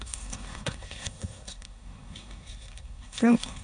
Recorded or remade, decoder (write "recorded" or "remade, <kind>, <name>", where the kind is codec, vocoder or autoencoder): remade, codec, SNAC